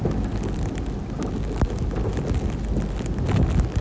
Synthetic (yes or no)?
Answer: no